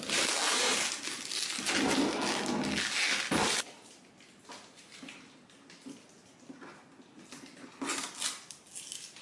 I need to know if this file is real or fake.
real